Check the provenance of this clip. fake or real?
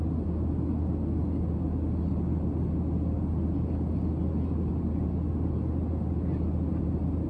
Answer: real